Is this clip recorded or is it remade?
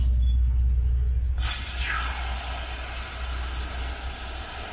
recorded